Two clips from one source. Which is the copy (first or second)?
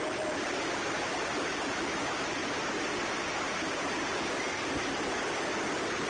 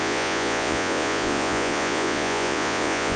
second